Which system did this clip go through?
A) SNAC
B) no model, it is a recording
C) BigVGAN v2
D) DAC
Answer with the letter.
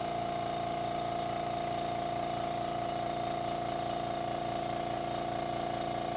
B